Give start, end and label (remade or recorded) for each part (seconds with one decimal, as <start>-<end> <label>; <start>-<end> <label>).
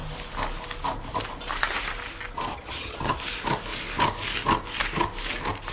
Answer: 0.0-2.5 recorded; 2.5-3.2 remade; 3.2-5.7 recorded